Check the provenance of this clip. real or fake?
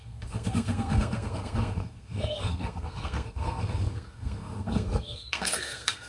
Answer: fake